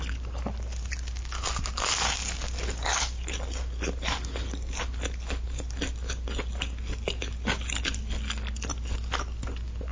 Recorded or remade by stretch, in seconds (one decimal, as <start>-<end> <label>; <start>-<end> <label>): 0.0-9.9 recorded